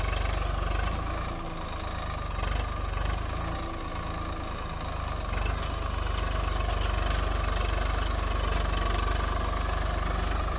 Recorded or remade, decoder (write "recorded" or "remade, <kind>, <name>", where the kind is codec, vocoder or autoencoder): recorded